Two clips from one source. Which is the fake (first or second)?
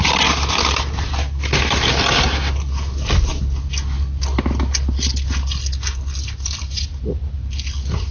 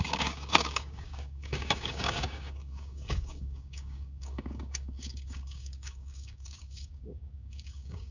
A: second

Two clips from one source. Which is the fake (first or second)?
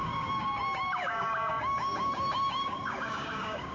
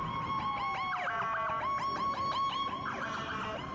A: first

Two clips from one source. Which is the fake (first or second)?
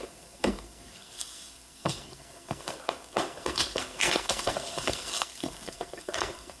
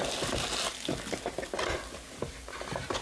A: first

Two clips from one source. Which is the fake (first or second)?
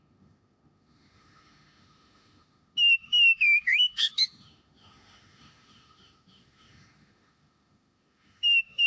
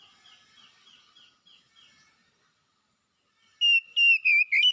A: first